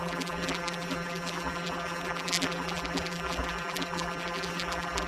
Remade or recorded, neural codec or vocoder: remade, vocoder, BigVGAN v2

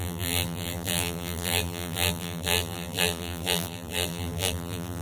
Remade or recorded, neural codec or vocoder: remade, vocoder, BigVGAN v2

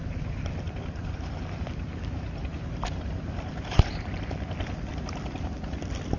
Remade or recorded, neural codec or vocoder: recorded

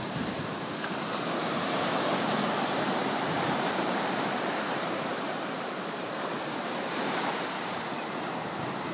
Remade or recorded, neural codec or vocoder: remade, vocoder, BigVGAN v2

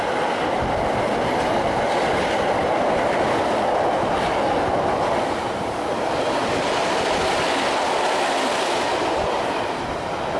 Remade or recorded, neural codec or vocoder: recorded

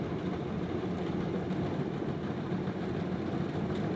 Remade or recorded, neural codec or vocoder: remade, vocoder, BigVGAN v2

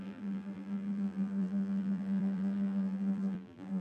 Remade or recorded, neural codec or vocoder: remade, vocoder, BigVGAN v2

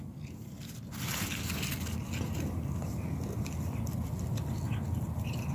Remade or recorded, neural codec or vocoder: recorded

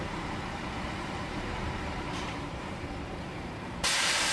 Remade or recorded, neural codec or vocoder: remade, vocoder, BigVGAN v2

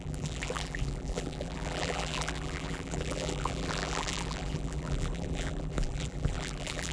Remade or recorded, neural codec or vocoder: remade, vocoder, BigVGAN v2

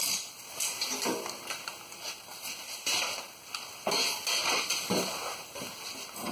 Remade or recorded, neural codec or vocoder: recorded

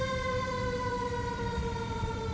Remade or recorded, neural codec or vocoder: remade, vocoder, BigVGAN v2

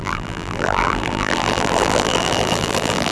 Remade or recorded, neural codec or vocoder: remade, vocoder, BigVGAN v2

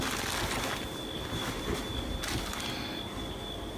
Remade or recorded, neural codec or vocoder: recorded